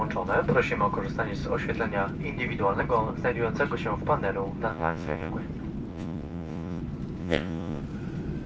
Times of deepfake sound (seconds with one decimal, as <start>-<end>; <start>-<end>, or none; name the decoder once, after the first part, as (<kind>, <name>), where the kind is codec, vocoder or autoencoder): 4.7-5.3 (vocoder, Vocos); 5.9-6.8; 7.2-7.8